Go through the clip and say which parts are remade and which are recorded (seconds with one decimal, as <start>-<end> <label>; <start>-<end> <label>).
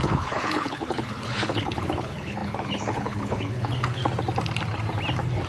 0.0-4.0 remade; 4.0-5.5 recorded